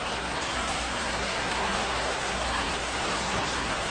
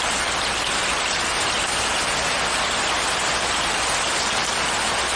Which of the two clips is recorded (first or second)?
second